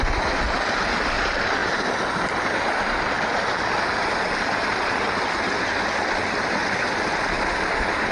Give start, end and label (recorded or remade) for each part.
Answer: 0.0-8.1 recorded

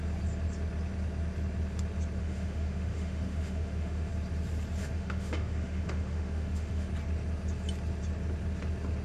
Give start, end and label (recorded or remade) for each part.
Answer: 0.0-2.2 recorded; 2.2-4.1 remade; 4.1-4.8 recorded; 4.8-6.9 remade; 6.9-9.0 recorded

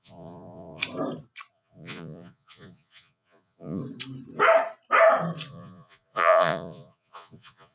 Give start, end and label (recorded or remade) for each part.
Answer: 0.0-0.8 remade; 0.8-1.5 recorded; 1.5-3.8 remade; 3.8-5.5 recorded; 5.5-7.7 remade

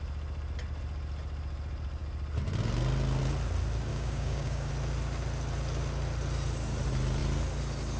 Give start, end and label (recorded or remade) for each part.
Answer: 0.0-3.9 recorded; 3.9-4.7 remade; 4.7-8.0 recorded

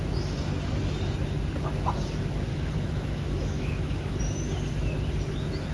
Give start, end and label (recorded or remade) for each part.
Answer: 0.0-2.5 recorded; 2.5-4.2 remade; 4.2-5.7 recorded